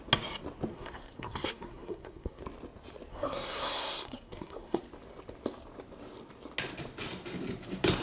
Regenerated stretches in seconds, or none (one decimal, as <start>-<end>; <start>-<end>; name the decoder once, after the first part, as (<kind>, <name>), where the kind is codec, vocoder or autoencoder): 0.7-2.4 (codec, SNAC); 3.1-4.8